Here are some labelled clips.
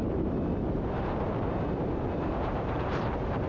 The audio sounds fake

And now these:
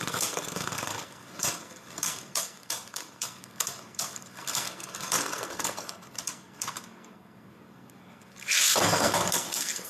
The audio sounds fake